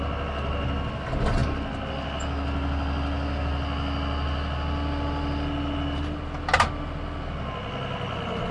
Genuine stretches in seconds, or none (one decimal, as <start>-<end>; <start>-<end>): 0.0-8.5